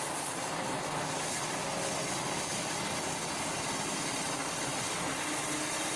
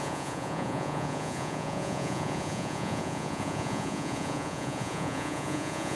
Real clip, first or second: first